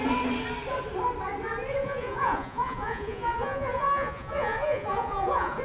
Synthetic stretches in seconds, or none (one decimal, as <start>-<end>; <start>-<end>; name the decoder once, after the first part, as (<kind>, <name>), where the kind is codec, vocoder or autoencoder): 1.8-5.6 (vocoder, Vocos)